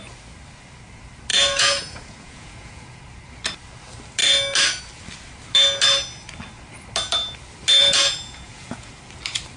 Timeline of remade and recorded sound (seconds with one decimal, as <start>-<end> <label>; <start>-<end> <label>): 0.0-1.3 recorded; 1.3-3.0 remade; 3.0-7.8 recorded; 7.8-8.9 remade; 8.9-9.6 recorded